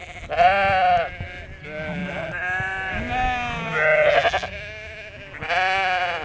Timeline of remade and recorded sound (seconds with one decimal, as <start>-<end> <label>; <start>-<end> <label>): 0.0-6.2 recorded